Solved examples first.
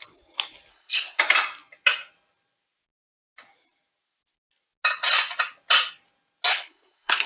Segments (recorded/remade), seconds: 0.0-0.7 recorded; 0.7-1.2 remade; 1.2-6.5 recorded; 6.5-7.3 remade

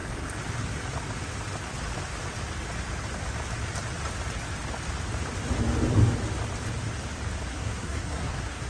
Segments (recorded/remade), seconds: 0.0-7.5 recorded; 7.5-8.7 remade